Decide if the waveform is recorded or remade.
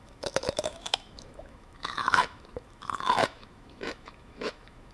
remade